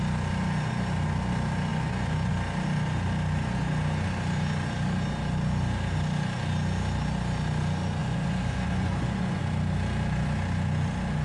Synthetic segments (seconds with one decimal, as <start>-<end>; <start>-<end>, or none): 1.7-2.3; 8.0-9.4